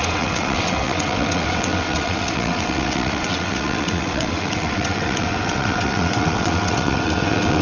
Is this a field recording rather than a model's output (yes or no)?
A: no